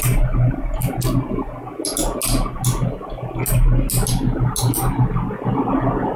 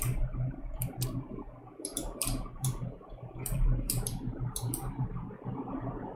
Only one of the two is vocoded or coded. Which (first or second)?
second